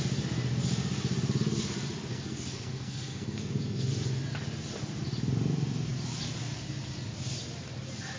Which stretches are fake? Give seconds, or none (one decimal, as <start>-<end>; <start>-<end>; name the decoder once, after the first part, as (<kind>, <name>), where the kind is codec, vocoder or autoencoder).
2.1-3.9 (codec, SNAC)